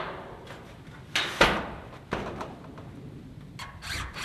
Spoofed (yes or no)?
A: no